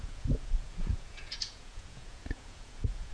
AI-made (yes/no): yes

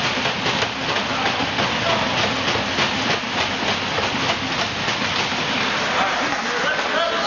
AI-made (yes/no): no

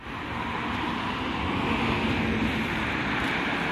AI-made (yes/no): no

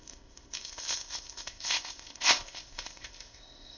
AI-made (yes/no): yes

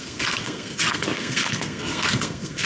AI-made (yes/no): yes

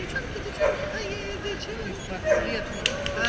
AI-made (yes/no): no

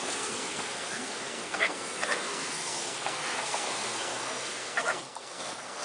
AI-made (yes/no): yes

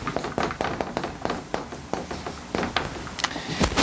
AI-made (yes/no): no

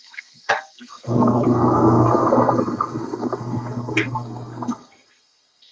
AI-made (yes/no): yes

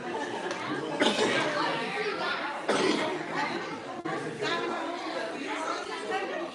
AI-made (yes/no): no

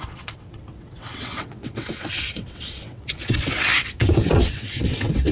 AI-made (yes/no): yes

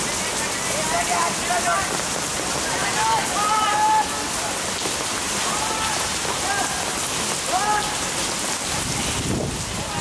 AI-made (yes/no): no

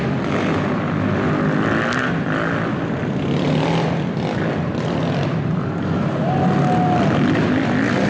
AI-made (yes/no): no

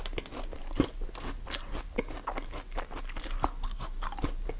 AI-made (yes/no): no